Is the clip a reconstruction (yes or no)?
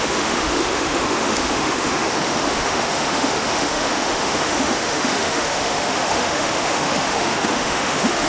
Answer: yes